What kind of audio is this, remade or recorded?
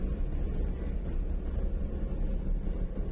recorded